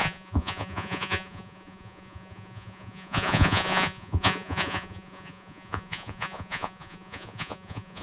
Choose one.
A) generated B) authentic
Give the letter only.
A